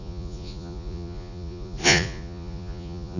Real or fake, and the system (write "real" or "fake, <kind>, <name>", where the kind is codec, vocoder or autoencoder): fake, vocoder, Vocos